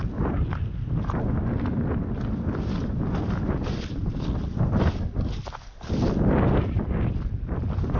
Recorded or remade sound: recorded